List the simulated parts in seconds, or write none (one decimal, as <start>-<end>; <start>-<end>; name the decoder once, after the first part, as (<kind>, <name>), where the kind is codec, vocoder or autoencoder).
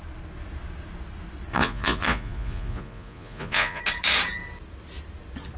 1.5-3.8 (vocoder, Vocos)